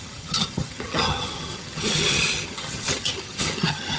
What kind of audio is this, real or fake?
fake